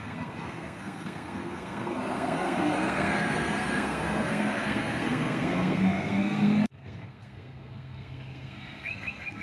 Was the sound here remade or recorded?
remade